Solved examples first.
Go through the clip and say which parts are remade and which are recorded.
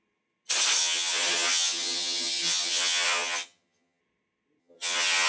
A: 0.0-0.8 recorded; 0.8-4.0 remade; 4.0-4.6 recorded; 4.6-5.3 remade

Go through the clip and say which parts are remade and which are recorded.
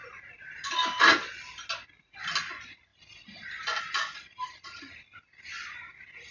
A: 0.0-6.3 recorded